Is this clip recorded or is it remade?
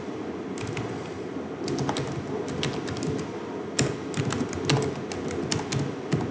recorded